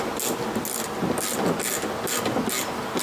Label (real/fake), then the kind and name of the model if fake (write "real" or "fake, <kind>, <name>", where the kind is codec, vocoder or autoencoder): real